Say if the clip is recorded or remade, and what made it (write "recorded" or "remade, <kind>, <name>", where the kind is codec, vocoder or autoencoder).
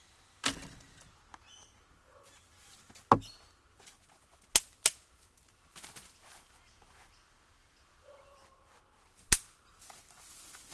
recorded